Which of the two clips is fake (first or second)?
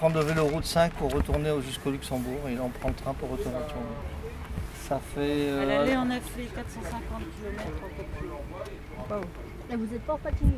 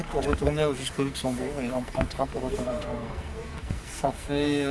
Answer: second